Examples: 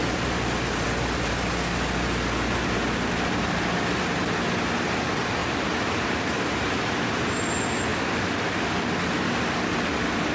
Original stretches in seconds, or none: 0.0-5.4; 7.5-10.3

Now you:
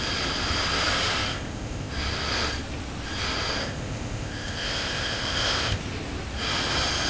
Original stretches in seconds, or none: 0.0-1.3; 1.9-3.6; 5.8-7.1

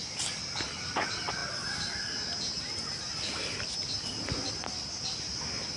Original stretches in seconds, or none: 0.0-5.8

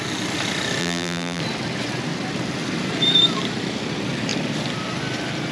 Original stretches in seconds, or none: 0.0-0.8; 1.4-5.5

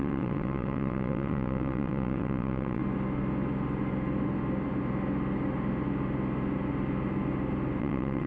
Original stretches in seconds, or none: 2.8-7.8

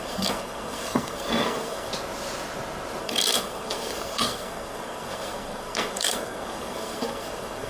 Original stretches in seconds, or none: 1.9-3.0